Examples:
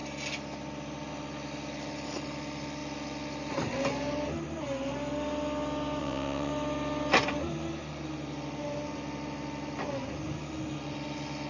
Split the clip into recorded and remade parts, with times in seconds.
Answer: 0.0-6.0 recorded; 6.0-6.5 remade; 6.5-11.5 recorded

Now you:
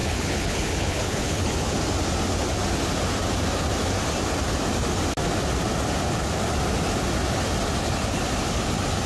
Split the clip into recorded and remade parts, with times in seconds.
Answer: 0.0-1.7 remade; 1.7-9.1 recorded

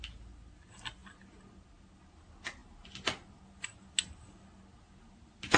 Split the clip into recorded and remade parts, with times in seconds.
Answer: 0.0-5.6 recorded